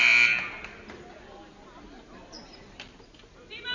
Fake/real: real